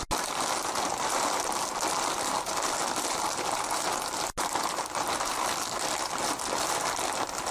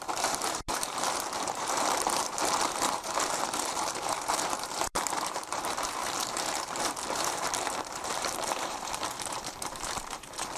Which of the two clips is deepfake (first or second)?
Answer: second